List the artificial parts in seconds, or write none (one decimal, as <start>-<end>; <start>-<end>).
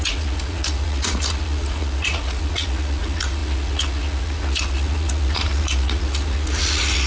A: 0.0-7.1